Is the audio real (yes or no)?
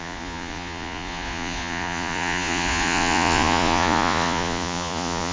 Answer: no